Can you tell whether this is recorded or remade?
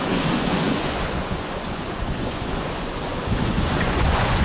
remade